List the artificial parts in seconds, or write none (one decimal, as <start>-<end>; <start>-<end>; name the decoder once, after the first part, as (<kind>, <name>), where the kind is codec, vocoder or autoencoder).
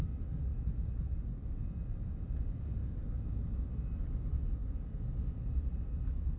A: none